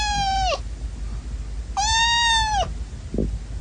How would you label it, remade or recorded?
recorded